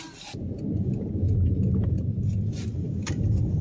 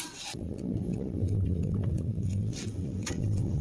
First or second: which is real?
first